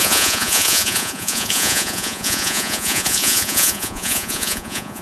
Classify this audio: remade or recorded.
remade